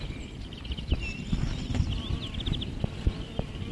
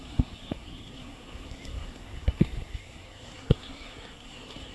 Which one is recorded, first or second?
first